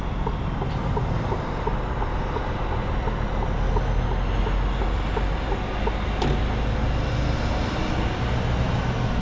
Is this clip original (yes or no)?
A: yes